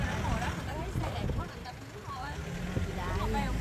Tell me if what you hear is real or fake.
real